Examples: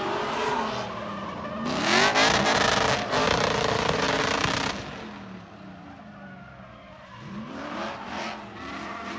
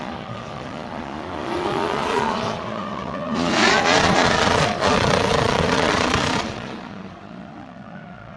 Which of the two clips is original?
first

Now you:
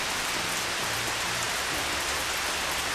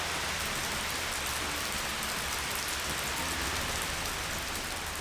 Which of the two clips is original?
second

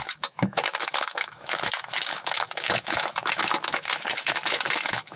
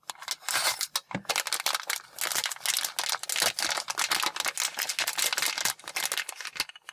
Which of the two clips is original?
second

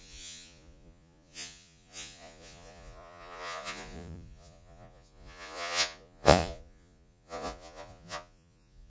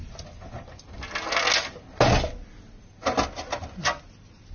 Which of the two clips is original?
second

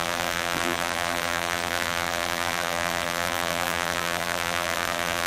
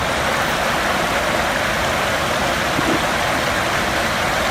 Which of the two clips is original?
second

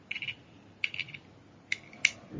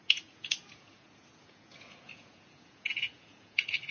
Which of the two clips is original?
first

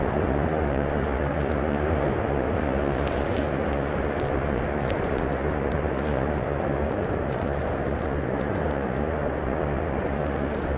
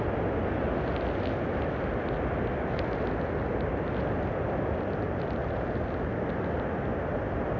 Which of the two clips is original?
second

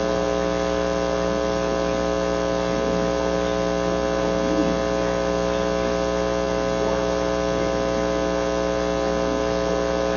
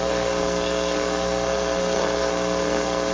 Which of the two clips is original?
first